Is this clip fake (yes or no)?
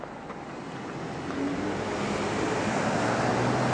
no